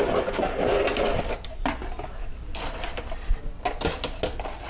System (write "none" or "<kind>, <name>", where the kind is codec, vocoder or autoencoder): none